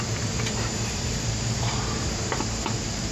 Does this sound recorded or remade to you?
remade